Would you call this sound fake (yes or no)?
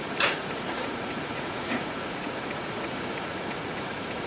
yes